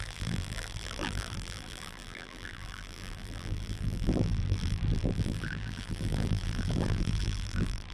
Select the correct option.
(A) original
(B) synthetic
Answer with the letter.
B